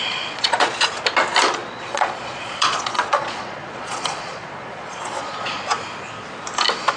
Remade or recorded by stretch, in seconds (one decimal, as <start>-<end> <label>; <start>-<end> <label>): 0.0-0.8 remade; 0.8-1.6 recorded; 1.6-5.6 remade; 5.6-7.0 recorded